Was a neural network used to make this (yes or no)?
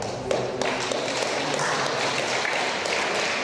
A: no